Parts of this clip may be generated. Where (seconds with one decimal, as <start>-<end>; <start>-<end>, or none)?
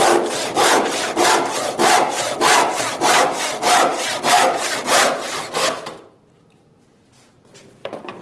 none